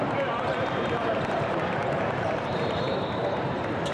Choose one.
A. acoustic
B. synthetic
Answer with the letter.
B